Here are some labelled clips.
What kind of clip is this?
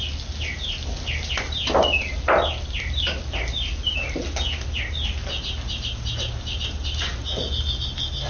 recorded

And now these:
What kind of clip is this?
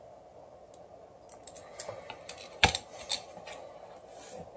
recorded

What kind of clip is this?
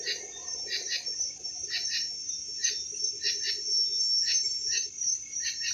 recorded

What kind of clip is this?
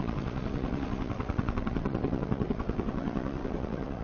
remade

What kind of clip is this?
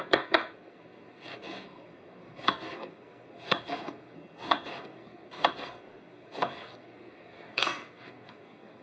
remade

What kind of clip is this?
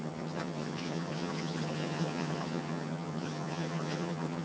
remade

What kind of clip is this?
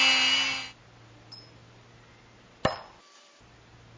recorded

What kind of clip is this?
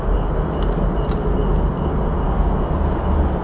recorded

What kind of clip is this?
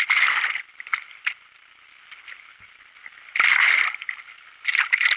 recorded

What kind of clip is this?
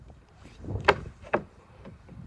remade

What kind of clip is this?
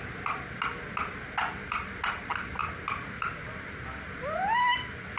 recorded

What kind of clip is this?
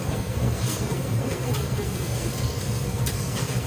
remade